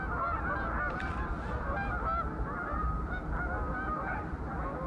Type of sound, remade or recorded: recorded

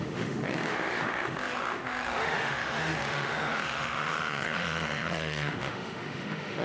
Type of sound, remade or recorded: remade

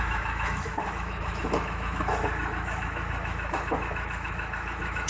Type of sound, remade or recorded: remade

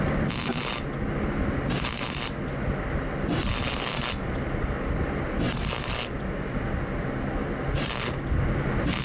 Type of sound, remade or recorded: recorded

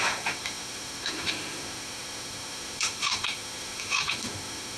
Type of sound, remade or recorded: remade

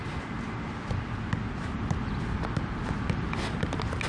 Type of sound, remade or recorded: recorded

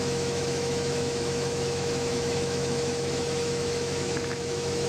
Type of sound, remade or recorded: remade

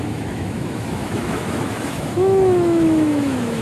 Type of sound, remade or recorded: remade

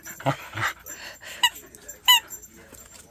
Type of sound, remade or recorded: recorded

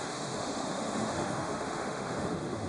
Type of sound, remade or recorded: remade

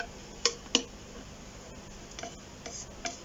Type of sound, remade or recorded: recorded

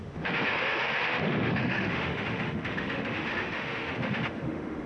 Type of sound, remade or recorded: remade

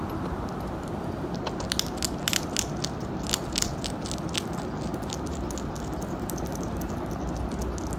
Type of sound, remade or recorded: recorded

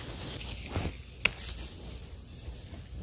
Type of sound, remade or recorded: recorded